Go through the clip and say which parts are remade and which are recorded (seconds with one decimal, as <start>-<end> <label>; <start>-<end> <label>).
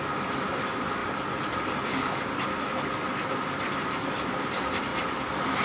0.0-5.6 recorded